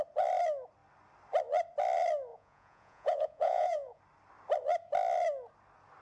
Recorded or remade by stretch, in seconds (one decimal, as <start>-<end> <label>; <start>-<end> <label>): 0.0-2.3 recorded; 2.3-4.0 remade; 4.0-6.0 recorded